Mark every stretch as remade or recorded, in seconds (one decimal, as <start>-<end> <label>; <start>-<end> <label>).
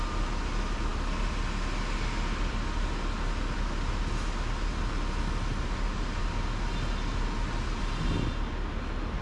0.0-9.2 recorded